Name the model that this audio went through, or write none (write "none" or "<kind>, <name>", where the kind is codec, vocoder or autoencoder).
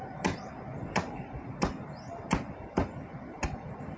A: none